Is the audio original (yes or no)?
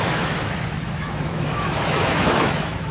no